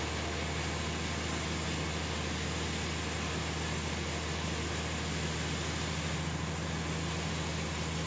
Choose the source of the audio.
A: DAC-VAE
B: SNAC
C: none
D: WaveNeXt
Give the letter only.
C